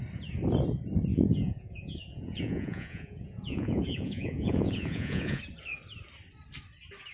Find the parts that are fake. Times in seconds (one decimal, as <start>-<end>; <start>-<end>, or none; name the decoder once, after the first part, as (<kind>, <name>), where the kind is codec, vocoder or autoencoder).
1.1-5.4 (vocoder, Vocos)